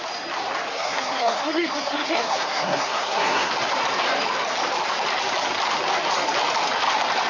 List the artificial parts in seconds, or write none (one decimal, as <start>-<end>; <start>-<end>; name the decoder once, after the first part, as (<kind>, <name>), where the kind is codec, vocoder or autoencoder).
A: 0.7-3.5 (codec, SNAC)